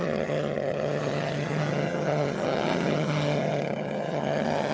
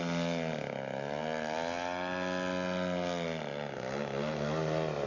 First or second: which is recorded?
second